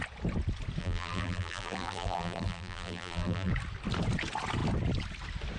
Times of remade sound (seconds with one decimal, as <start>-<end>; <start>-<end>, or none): 0.8-3.5

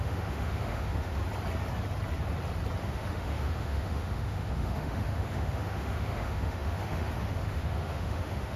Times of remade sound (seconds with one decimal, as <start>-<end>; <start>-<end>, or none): 0.0-1.2; 2.8-8.6

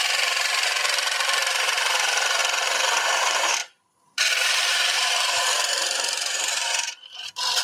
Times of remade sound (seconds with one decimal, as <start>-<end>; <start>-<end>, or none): 0.0-2.4; 3.0-7.6